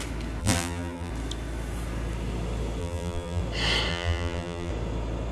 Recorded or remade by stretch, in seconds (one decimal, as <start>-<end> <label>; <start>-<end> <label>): 0.0-0.4 recorded; 0.4-1.1 remade; 1.1-2.8 recorded; 2.8-3.4 remade; 3.4-3.9 recorded; 3.9-4.7 remade; 4.7-5.3 recorded